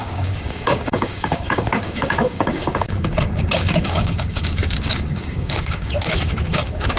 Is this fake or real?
fake